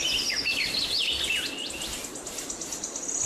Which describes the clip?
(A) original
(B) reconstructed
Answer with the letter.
A